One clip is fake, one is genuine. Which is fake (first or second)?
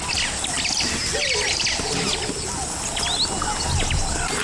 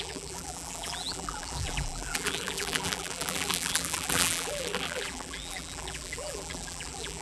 second